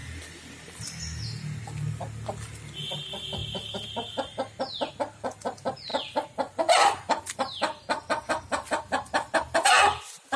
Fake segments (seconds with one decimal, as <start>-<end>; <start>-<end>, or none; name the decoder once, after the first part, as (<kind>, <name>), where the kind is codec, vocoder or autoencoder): none